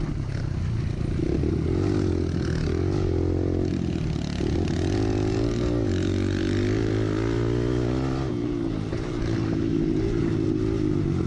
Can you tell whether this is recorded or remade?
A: recorded